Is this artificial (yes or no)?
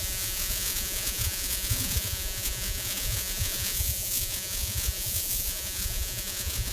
yes